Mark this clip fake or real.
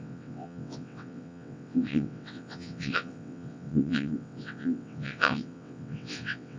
fake